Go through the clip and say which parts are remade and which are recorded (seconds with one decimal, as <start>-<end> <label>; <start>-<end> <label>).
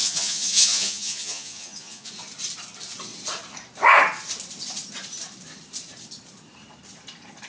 0.0-2.1 remade; 2.1-7.5 recorded